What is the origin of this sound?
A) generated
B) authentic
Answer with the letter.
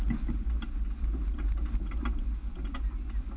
B